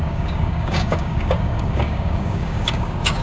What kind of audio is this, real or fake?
fake